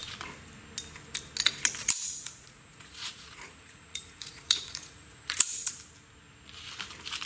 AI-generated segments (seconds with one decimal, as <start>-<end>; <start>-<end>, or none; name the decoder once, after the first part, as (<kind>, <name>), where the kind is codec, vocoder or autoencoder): 1.8-5.7 (vocoder, Vocos)